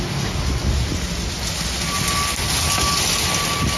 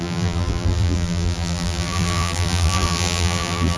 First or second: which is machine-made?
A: second